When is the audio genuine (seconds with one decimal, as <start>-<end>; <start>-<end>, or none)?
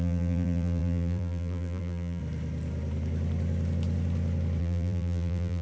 2.2-4.6